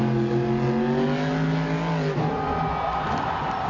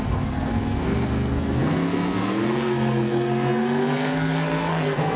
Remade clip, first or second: second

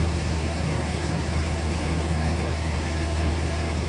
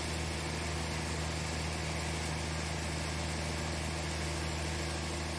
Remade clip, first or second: first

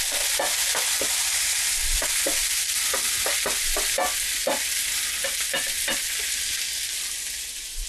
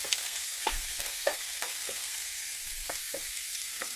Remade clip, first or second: second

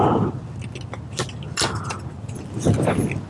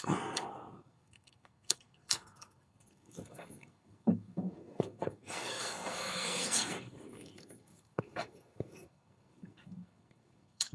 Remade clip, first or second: second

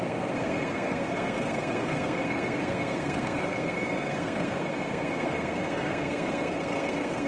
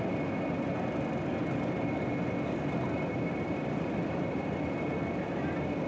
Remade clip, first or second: first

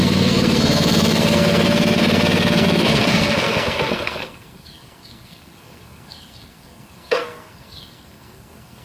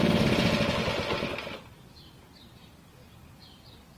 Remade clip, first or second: first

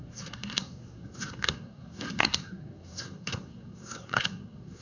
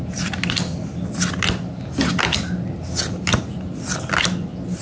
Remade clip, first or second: first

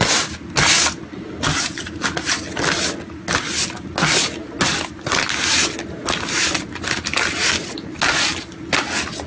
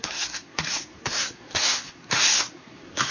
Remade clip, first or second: second